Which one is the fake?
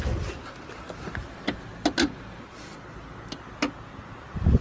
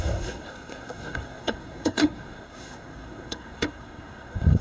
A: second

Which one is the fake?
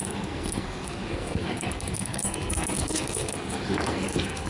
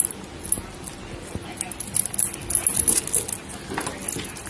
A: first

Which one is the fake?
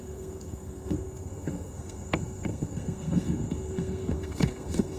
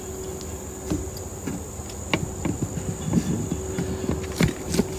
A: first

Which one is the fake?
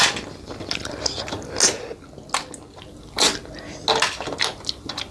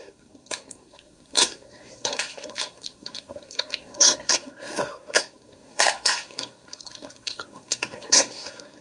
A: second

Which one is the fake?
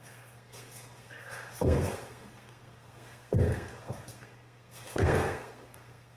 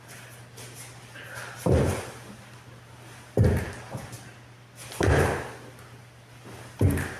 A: first